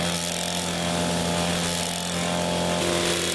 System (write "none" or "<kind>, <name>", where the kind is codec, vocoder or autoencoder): none